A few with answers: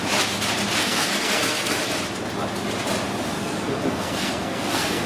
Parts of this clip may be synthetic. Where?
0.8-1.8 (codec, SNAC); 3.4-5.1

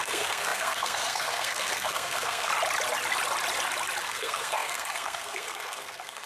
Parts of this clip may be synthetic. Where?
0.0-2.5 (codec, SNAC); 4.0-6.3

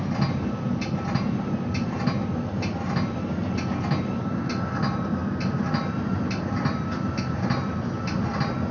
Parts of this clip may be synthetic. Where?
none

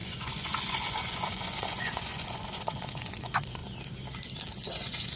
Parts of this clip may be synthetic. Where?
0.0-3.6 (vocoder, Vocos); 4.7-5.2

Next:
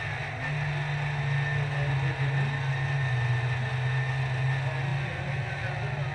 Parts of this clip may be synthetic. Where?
4.9-5.5 (vocoder, BigVGAN v2)

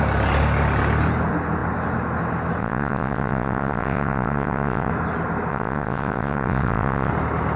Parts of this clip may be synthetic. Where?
2.6-4.9 (vocoder, WaveNeXt); 5.5-7.1

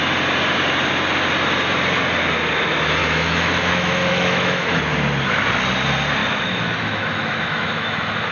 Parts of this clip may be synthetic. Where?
3.0-4.8 (autoencoder, DAC-VAE); 6.2-8.3

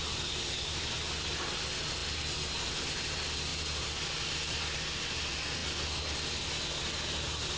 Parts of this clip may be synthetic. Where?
none